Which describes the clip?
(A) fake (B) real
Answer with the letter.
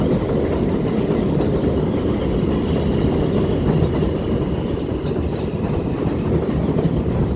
B